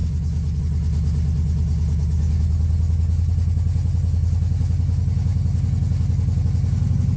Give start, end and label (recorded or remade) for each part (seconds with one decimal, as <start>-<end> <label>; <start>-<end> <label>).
0.0-7.2 recorded